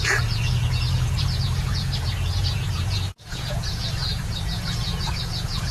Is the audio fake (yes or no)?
yes